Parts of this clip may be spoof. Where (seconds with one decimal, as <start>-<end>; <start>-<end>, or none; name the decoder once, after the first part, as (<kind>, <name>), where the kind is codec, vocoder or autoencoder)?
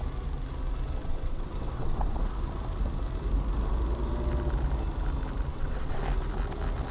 1.0-2.2 (vocoder, WaveNeXt); 5.5-6.0